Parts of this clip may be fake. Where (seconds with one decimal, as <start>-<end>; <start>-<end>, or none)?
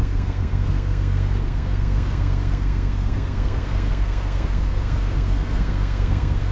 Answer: 0.0-6.5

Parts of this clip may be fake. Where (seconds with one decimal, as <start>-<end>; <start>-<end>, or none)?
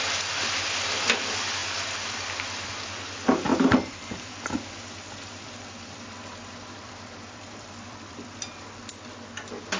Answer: 3.5-8.6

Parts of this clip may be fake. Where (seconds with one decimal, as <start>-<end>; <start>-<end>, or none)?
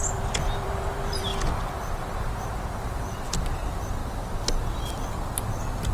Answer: 0.0-1.3; 2.4-4.0; 4.7-5.9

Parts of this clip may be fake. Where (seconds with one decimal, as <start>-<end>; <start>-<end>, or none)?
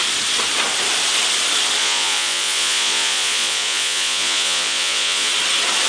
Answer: 1.8-5.3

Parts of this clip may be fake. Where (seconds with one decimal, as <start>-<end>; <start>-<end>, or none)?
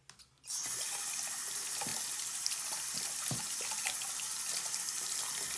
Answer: none